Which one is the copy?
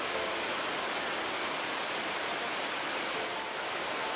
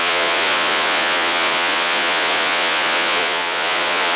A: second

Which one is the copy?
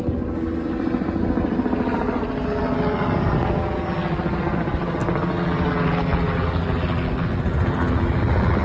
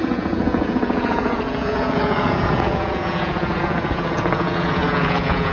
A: second